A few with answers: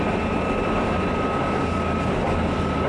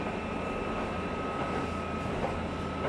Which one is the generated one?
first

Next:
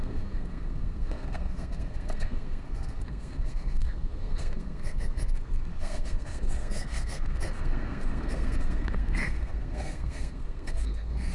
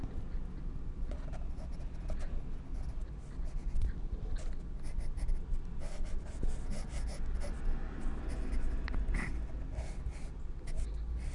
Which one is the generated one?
first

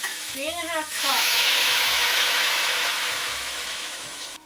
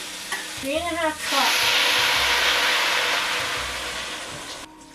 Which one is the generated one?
first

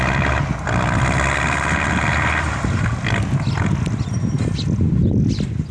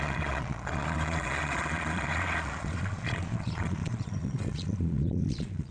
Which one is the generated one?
second